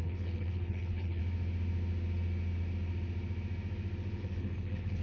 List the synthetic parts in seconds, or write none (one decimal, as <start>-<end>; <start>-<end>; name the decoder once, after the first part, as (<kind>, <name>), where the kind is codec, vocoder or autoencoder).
0.0-1.2 (codec, HILCodec); 4.2-5.0